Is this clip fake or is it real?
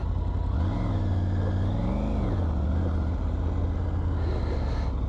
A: real